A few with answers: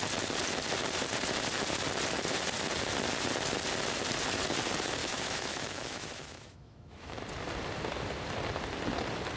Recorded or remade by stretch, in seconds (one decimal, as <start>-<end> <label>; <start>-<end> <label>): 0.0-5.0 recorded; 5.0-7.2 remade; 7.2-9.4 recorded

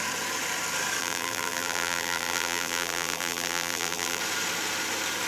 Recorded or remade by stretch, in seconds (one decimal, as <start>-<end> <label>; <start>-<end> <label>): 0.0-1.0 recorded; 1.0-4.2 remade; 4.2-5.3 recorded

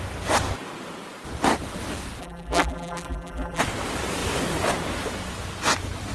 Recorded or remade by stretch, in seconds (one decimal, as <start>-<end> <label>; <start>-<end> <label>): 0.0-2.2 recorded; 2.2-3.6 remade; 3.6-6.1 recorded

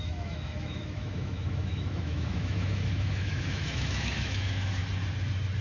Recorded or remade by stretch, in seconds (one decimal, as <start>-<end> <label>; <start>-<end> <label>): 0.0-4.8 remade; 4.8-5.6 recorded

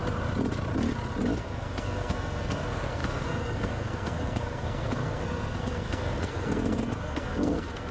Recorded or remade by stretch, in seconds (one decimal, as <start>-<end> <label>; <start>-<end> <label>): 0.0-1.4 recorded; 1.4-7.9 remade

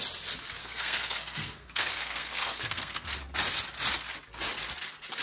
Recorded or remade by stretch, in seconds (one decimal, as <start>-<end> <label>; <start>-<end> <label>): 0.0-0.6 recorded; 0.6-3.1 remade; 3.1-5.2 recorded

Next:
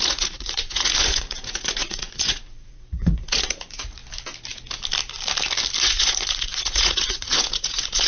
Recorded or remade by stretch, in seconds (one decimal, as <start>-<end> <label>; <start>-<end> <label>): 0.0-4.0 remade; 4.0-5.8 recorded; 5.8-8.1 remade